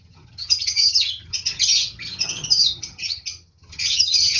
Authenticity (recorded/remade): remade